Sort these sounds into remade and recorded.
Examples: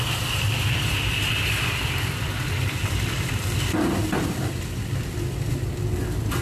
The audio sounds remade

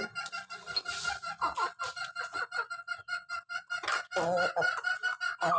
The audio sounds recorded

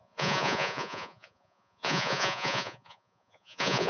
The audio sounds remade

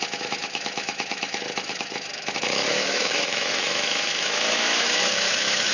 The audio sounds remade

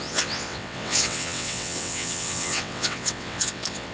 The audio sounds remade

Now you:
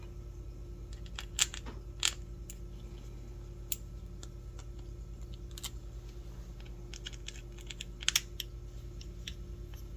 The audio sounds recorded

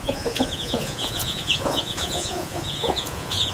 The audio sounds remade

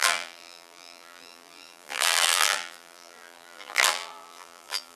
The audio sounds remade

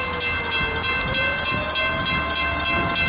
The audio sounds recorded